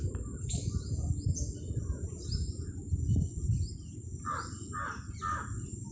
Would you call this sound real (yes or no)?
yes